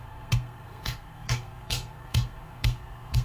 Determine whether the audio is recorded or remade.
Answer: remade